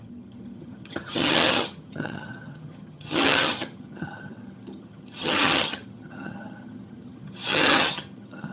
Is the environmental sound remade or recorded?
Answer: remade